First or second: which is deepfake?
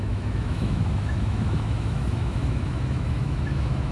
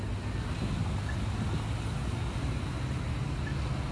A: first